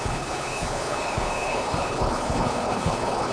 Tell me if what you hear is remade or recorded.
remade